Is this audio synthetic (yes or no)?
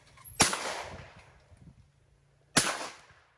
no